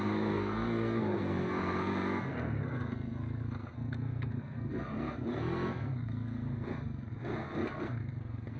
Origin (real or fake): fake